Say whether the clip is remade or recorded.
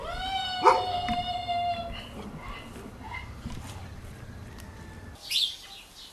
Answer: recorded